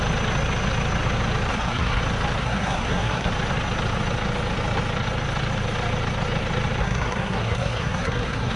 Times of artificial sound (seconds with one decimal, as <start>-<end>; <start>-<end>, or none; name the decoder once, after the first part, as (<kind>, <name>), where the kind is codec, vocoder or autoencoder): 1.5-2.0 (codec, SNAC); 2.4-3.3; 6.8-8.6